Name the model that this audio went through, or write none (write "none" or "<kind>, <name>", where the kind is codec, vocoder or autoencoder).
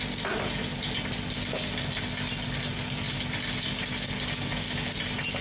none